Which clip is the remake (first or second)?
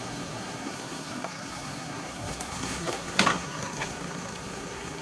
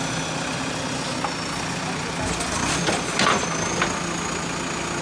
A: first